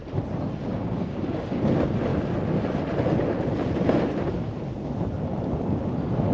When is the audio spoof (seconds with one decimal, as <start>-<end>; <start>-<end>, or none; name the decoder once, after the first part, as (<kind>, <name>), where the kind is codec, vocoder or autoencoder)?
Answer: 0.7-1.7 (codec, DAC)